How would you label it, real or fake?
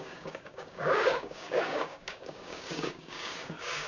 fake